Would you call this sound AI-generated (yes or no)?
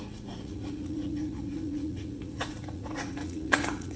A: yes